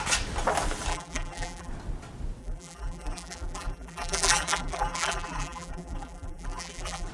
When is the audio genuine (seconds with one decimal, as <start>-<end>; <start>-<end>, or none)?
0.0-0.9; 1.7-2.4